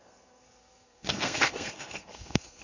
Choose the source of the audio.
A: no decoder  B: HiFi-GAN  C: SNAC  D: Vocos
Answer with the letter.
C